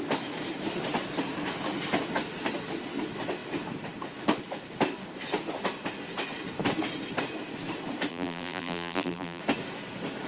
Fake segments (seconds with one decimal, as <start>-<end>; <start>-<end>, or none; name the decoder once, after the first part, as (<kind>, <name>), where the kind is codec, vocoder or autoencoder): 8.1-9.4 (vocoder, BigVGAN v2)